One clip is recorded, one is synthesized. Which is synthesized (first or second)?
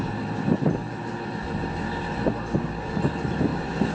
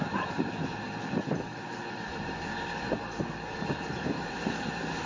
second